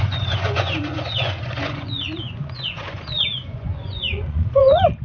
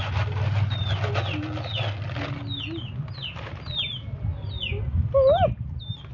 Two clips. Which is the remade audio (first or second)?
first